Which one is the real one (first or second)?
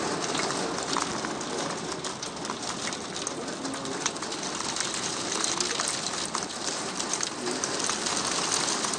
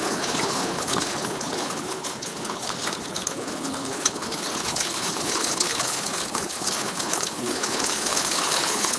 first